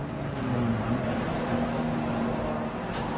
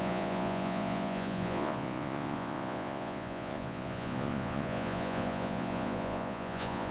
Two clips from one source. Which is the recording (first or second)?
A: first